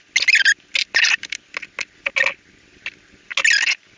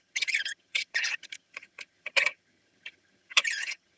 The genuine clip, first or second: first